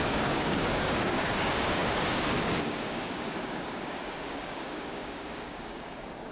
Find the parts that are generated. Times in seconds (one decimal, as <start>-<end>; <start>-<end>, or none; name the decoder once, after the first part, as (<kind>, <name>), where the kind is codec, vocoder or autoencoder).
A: 0.0-6.3 (codec, DAC)